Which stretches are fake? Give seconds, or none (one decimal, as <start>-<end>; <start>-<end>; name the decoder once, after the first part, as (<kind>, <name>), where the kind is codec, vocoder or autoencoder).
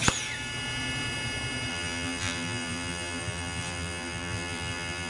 1.7-5.1 (vocoder, BigVGAN v2)